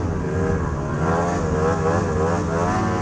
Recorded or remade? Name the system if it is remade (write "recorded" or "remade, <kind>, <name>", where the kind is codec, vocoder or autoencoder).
recorded